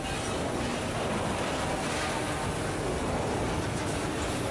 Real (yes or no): yes